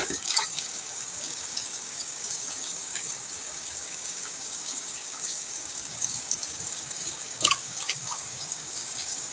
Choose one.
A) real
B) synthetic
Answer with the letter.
B